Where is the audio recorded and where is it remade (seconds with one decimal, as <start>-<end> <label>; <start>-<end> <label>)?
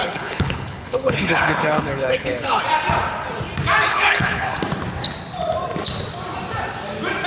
0.0-2.6 remade; 2.6-3.9 recorded; 3.9-4.6 remade; 4.6-7.3 recorded